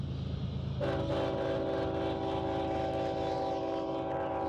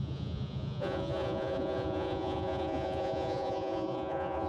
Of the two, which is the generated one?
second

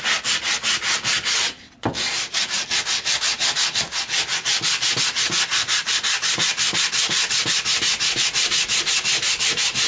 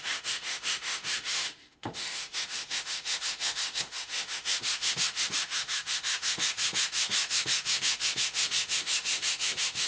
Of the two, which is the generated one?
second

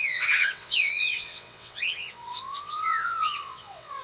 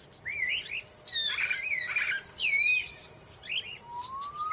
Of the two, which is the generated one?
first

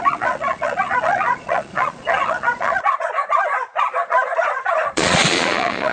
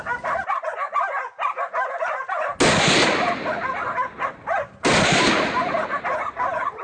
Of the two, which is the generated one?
first